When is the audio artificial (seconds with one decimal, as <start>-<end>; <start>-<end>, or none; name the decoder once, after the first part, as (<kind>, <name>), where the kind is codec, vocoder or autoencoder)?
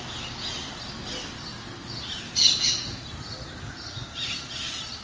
none